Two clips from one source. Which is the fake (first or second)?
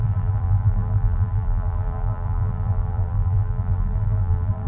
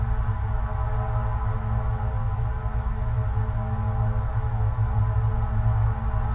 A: first